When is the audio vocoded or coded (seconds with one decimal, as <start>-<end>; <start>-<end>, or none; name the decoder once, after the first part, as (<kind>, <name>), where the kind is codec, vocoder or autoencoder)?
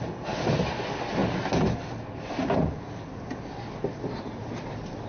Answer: none